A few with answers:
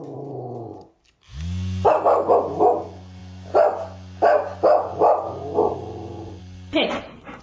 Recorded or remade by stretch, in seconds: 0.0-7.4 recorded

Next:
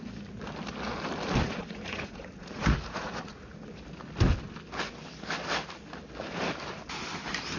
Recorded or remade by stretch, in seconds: 0.0-1.4 recorded; 1.4-3.7 remade; 3.7-7.6 recorded

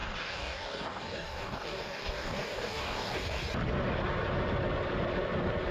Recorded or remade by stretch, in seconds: 0.0-3.4 remade; 3.4-5.7 recorded

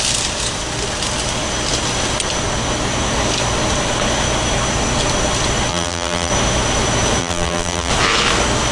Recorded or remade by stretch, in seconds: 0.0-5.7 recorded; 5.7-6.3 remade; 6.3-7.2 recorded; 7.2-7.9 remade; 7.9-8.7 recorded

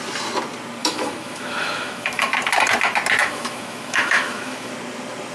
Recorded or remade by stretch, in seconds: 0.0-0.8 recorded; 0.8-2.3 remade; 2.3-3.2 recorded; 3.2-4.7 remade; 4.7-5.3 recorded

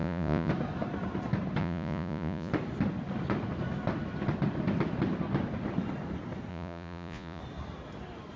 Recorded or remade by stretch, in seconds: 0.0-0.5 remade; 0.5-1.6 recorded; 1.6-2.5 remade; 2.5-6.5 recorded; 6.5-7.4 remade; 7.4-8.4 recorded

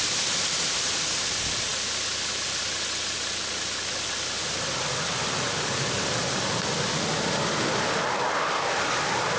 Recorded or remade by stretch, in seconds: 0.0-9.4 recorded

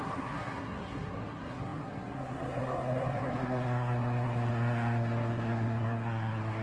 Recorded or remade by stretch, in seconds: 0.0-6.6 remade